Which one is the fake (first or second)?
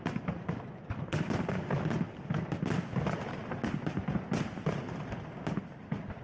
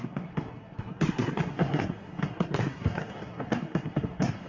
second